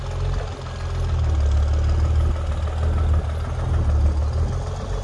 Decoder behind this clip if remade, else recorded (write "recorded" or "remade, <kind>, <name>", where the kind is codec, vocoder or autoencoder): recorded